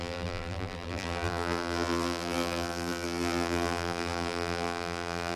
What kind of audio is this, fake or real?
fake